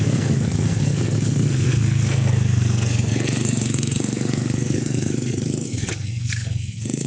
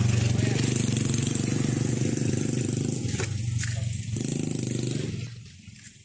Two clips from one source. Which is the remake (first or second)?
first